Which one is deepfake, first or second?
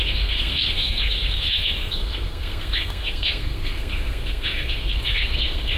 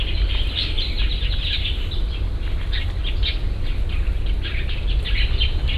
first